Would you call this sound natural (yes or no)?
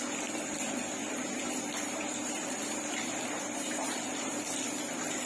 no